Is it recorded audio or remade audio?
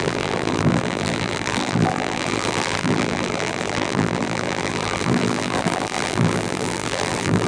remade